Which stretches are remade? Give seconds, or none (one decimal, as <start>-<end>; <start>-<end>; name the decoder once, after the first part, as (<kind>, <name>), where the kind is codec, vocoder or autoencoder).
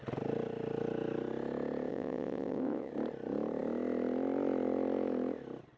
1.9-2.9 (vocoder, WaveNeXt)